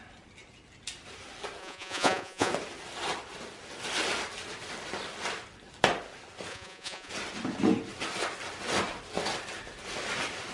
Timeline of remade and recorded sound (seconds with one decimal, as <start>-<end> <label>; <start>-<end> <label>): 0.0-1.6 recorded; 1.6-2.5 remade; 2.5-6.5 recorded; 6.5-7.1 remade; 7.1-10.5 recorded